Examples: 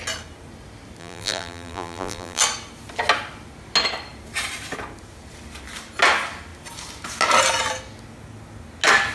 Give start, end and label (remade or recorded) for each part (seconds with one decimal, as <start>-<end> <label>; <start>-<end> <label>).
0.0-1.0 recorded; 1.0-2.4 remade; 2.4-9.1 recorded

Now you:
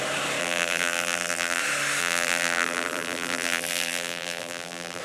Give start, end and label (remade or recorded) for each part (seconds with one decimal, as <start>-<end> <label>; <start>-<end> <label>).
0.0-0.4 recorded; 0.4-1.6 remade; 1.6-2.0 recorded; 2.0-5.0 remade

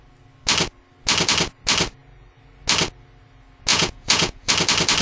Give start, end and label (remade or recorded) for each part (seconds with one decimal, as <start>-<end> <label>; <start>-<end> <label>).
0.0-3.7 recorded; 3.7-4.5 remade; 4.5-5.0 recorded

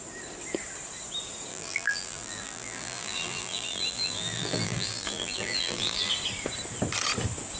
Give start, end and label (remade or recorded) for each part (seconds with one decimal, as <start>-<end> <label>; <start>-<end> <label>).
0.0-1.5 recorded; 1.5-6.1 remade; 6.1-7.6 recorded